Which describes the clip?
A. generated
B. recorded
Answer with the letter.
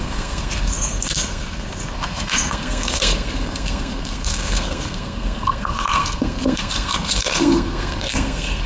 A